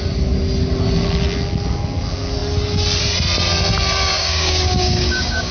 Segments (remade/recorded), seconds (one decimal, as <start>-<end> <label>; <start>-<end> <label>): 0.0-4.1 recorded; 4.1-5.5 remade